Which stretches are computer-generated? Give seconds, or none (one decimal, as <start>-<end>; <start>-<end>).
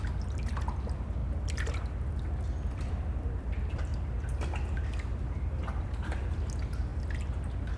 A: 0.0-1.2; 2.9-3.9; 5.8-6.9